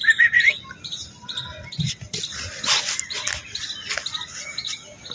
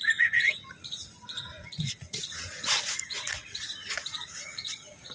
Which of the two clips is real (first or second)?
first